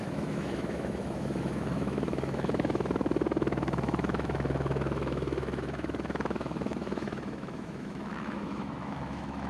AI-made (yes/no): yes